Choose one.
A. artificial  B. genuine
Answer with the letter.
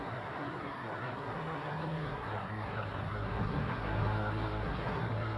A